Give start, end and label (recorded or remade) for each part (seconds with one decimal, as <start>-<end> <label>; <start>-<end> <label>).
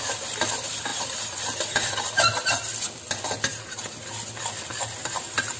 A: 0.0-5.6 recorded